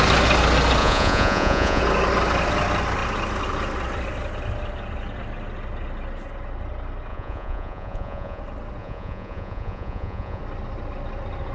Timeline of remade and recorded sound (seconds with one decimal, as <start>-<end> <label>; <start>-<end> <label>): 0.0-0.8 recorded; 0.8-1.8 remade; 1.8-7.1 recorded; 7.1-8.4 remade; 8.4-8.8 recorded; 8.8-10.4 remade; 10.4-11.5 recorded